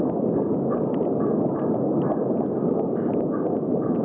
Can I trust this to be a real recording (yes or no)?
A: no